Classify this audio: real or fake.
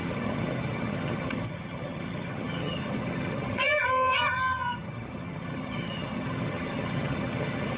fake